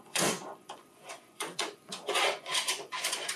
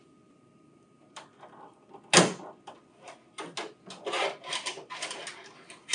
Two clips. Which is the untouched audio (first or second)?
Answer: second